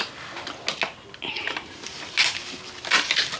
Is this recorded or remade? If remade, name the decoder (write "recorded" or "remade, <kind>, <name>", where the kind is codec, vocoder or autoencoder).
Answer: recorded